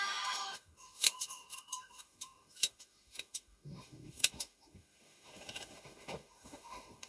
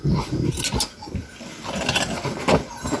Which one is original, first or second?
second